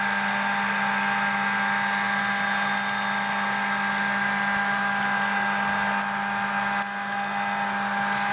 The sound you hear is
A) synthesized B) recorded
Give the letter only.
B